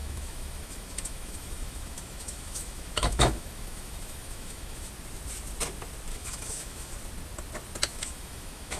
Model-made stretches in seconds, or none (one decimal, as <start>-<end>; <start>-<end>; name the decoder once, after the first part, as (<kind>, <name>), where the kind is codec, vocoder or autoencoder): 0.0-4.9 (autoencoder, DAC-VAE); 6.1-6.9; 7.9-8.8